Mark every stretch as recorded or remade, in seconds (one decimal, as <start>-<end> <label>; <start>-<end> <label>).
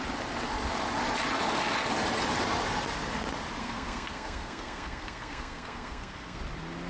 0.0-3.6 recorded; 3.6-6.4 remade; 6.4-6.9 recorded